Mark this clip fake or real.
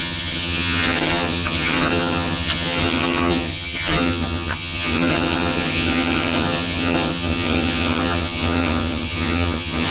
fake